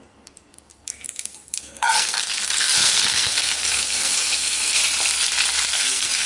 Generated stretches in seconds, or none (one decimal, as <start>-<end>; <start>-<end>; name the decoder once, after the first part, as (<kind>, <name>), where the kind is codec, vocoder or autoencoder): 0.0-4.8 (codec, SNAC); 5.7-6.3